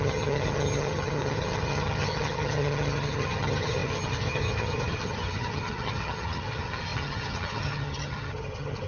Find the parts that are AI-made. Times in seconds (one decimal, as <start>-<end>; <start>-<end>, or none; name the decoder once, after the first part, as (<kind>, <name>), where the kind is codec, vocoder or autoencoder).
0.0-8.9 (vocoder, HiFi-GAN)

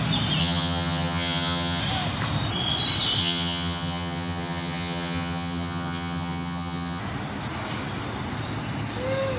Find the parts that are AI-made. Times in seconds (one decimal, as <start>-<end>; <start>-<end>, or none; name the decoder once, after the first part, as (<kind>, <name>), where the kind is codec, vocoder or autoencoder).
0.4-1.8 (vocoder, HiFi-GAN); 3.2-7.0

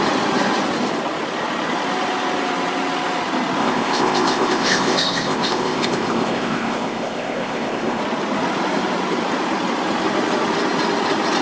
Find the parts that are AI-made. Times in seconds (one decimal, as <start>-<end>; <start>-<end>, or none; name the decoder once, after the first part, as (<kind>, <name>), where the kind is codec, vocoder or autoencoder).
3.6-8.0 (codec, ZipCodec)

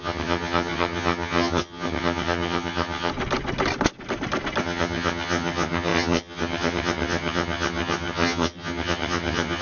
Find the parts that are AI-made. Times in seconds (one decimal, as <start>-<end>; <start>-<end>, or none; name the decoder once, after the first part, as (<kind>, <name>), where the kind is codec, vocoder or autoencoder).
0.0-3.1 (vocoder, HiFi-GAN); 4.6-9.6